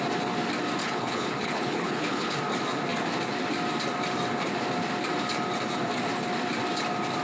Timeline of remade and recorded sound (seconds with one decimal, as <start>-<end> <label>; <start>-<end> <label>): 0.0-0.8 recorded; 0.8-2.4 remade; 2.4-7.2 recorded